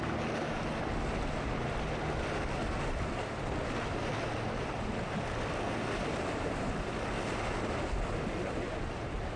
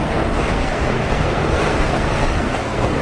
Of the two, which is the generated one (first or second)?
second